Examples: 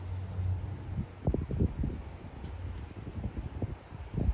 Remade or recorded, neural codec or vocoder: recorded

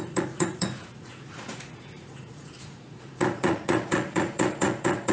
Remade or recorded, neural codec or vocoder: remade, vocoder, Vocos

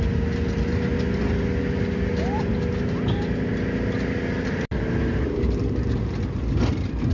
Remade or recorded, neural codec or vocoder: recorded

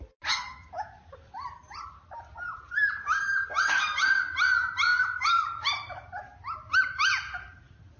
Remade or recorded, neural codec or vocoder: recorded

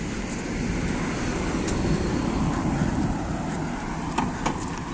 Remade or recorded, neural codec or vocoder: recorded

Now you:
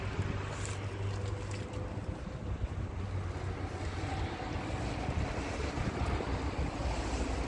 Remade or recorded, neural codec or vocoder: recorded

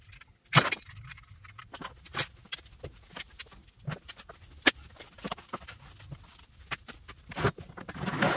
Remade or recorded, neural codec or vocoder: recorded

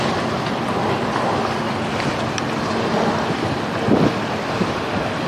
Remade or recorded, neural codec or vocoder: recorded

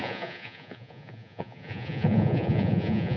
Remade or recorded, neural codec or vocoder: remade, vocoder, Vocos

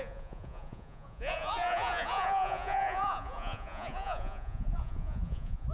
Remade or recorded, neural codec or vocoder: remade, vocoder, Vocos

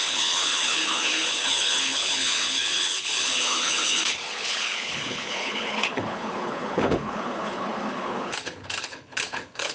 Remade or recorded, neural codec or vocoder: remade, codec, HILCodec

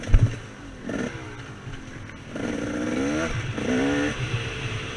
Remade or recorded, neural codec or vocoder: recorded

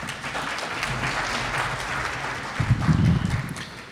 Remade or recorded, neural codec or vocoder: recorded